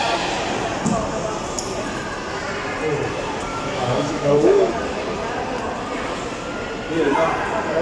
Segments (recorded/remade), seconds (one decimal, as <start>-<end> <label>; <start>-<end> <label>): 0.0-3.5 recorded; 3.5-4.7 remade; 4.7-7.8 recorded